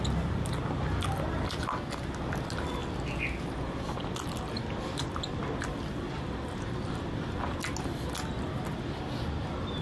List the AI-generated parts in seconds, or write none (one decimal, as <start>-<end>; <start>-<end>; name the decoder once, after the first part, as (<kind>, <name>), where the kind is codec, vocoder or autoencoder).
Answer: none